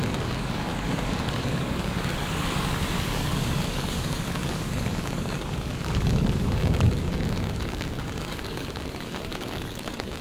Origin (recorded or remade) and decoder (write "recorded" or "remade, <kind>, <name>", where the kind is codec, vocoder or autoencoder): remade, codec, DAC